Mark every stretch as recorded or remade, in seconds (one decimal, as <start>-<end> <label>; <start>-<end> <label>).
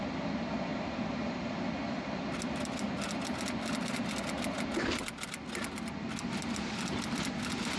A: 0.0-0.7 recorded; 0.7-1.6 remade; 1.6-7.8 recorded